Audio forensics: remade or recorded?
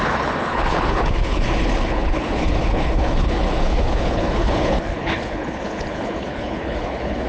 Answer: remade